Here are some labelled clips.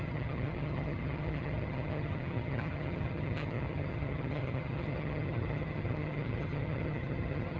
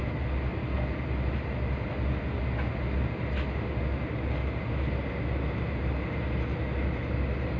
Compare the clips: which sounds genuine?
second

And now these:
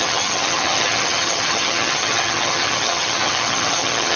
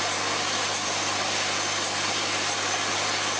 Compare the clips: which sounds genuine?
second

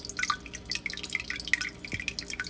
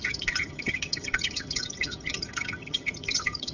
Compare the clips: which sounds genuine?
first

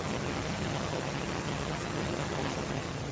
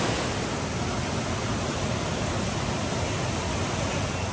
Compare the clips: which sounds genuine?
second